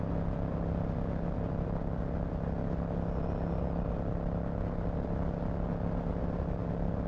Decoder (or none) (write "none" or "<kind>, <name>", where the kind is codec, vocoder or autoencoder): none